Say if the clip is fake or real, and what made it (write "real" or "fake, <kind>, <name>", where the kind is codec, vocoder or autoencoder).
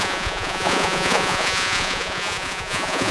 fake, vocoder, Vocos